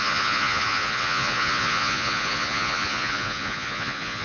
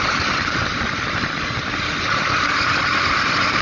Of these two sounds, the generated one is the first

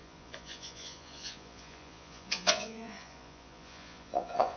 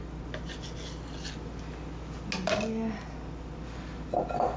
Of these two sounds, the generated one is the first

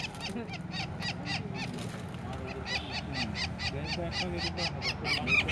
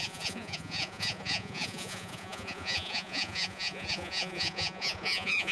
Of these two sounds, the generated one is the second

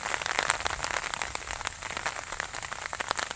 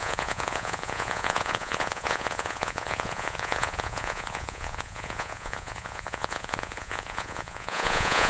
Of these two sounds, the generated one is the second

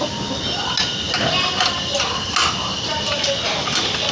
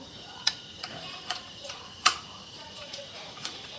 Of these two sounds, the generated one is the second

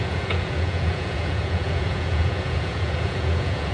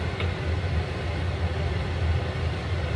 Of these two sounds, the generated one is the first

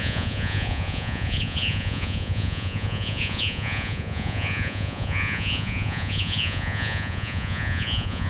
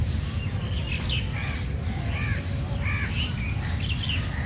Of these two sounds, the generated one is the first